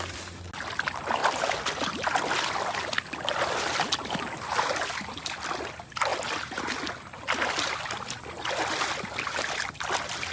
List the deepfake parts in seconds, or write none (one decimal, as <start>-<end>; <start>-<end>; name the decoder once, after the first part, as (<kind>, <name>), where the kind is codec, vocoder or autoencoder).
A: none